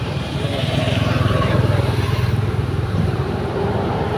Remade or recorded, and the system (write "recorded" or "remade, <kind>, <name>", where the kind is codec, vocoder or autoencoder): remade, vocoder, BigVGAN v2